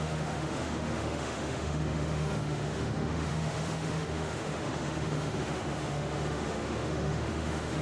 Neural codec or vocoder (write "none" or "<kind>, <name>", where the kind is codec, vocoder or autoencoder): autoencoder, DAC-VAE